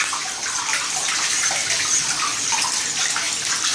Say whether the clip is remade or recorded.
recorded